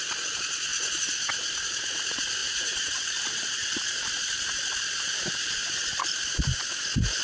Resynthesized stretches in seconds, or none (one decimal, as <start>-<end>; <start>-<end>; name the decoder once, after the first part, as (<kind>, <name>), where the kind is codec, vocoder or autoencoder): 2.4-5.1 (vocoder, BigVGAN v2); 5.6-6.8